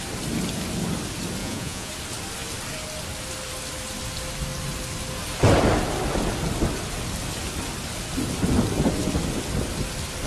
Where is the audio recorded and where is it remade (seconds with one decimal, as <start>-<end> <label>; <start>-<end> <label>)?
0.0-1.4 recorded; 1.4-1.9 remade; 1.9-10.3 recorded